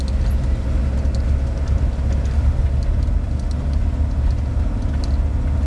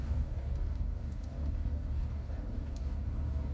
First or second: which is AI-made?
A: second